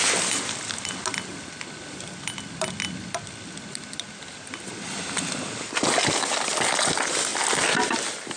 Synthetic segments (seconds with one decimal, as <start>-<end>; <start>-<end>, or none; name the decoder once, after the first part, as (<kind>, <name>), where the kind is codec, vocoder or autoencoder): none